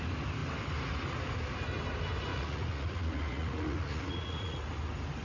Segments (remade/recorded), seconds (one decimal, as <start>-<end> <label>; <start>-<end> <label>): 0.0-2.3 recorded; 2.3-4.6 remade; 4.6-5.2 recorded